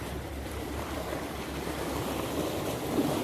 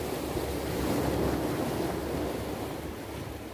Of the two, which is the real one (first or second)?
second